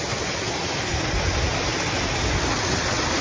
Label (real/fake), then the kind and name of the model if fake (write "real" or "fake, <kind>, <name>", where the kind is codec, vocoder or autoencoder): real